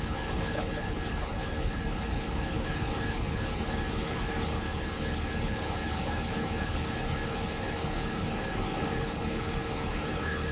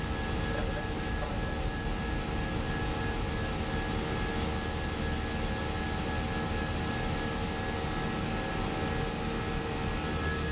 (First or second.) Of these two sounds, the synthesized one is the first